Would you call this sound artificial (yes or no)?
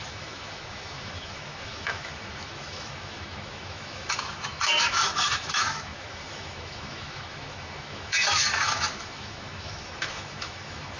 yes